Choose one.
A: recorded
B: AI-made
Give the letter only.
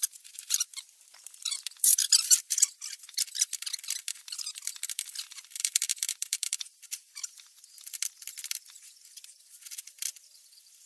B